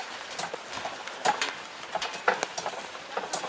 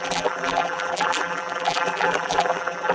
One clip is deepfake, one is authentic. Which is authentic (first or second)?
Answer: first